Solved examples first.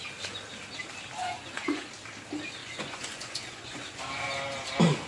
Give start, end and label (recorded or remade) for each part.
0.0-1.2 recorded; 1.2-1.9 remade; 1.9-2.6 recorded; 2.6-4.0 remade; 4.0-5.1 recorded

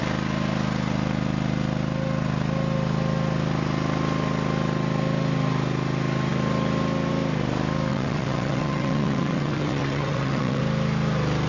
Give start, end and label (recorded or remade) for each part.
0.0-7.9 recorded; 7.9-10.6 remade; 10.6-11.5 recorded

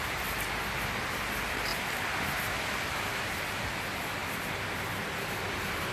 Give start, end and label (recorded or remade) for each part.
0.0-1.7 recorded; 1.7-3.8 remade; 3.8-5.9 recorded